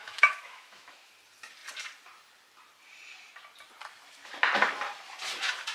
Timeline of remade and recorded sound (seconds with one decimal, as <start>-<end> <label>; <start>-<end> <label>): 0.0-1.1 remade; 1.1-5.7 recorded

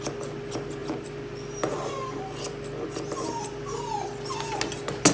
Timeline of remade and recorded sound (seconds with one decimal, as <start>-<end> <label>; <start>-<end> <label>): 0.0-5.1 recorded

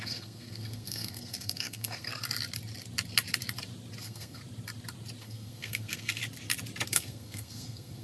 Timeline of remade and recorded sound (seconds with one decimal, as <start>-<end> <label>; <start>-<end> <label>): 0.0-2.1 remade; 2.1-4.0 recorded; 4.0-4.4 remade; 4.4-5.2 recorded; 5.2-6.2 remade; 6.2-6.9 recorded; 6.9-8.0 remade

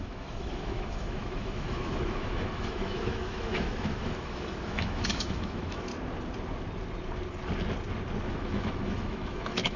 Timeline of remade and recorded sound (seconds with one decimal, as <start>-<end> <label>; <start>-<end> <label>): 0.0-5.9 remade; 5.9-8.3 recorded; 8.3-9.8 remade

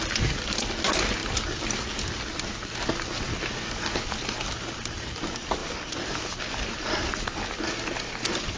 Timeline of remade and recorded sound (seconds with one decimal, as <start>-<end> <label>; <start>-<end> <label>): 0.0-8.6 recorded

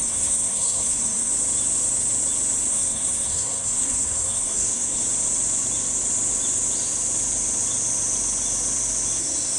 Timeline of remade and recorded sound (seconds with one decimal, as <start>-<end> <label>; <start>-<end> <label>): 0.0-1.3 remade; 1.3-2.7 recorded; 2.7-5.0 remade; 5.0-9.2 recorded; 9.2-9.6 remade

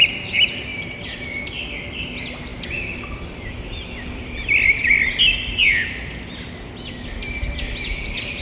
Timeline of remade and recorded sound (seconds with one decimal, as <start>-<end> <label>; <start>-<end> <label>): 0.0-0.7 recorded; 0.7-1.4 remade; 1.4-2.5 recorded; 2.5-5.2 remade; 5.2-8.4 recorded